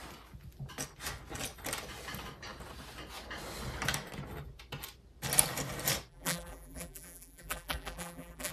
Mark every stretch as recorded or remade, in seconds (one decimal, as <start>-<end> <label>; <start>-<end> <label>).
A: 0.0-6.1 recorded; 6.1-8.5 remade